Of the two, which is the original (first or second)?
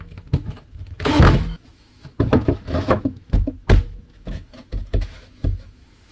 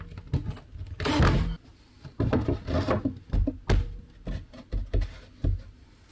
second